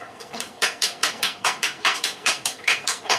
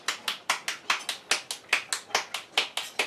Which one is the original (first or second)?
second